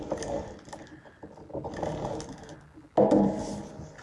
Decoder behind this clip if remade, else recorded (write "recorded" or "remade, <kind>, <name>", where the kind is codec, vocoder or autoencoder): recorded